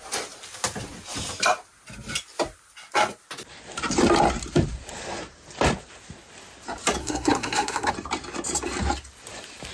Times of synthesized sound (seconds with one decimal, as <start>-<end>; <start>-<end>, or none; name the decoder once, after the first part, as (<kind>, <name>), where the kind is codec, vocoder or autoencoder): 7.0-7.9 (codec, SNAC)